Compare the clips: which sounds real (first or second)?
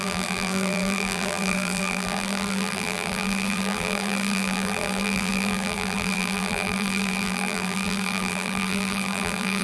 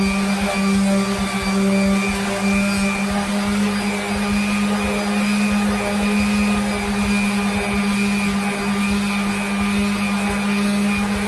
second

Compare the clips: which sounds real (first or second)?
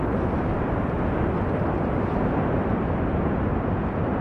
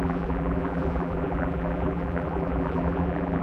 first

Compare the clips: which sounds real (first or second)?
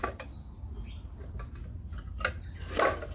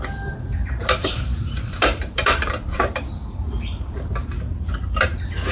first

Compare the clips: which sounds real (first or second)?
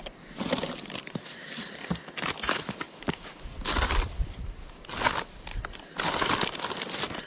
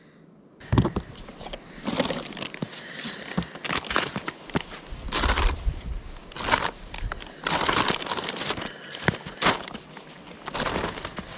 second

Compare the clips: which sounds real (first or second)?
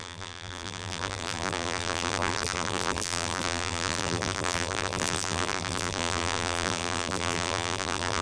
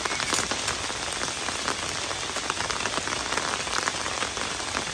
second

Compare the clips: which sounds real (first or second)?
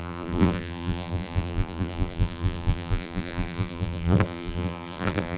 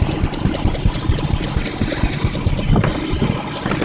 second